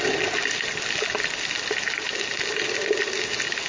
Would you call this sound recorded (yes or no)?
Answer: yes